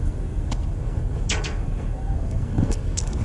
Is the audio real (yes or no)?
no